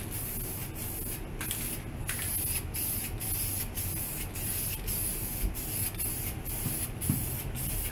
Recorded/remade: recorded